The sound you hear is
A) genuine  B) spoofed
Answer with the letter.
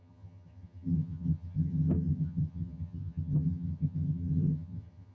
B